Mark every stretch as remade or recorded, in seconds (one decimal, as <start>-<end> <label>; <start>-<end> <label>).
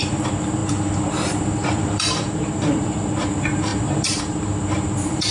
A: 0.0-5.3 remade